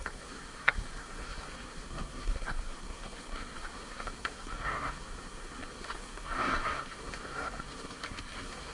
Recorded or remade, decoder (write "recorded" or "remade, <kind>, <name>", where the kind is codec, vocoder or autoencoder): remade, codec, SNAC